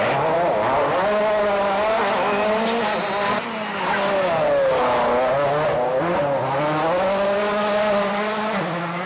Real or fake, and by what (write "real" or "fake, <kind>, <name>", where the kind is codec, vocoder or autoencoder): real